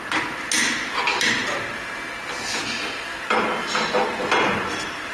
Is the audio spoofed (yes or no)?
no